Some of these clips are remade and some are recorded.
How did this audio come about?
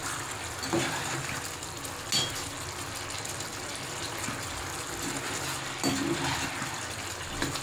recorded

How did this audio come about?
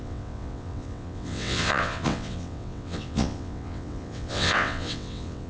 remade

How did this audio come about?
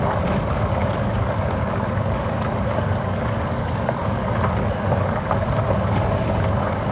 remade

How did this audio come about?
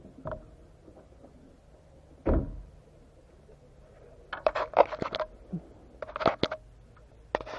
recorded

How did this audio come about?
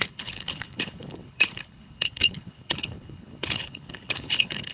remade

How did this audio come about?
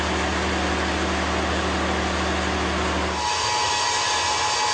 recorded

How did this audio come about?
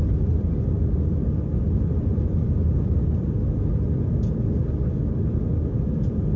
recorded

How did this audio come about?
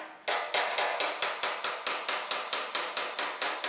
recorded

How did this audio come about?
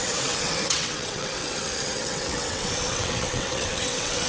remade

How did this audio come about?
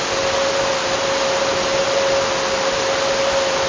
recorded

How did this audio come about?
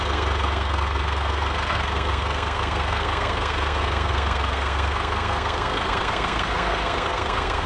remade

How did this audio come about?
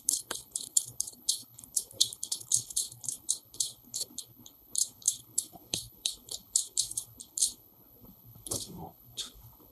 remade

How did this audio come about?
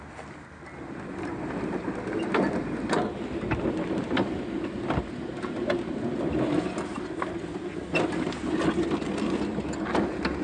recorded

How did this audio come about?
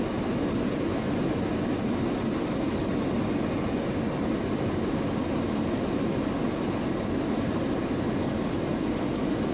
recorded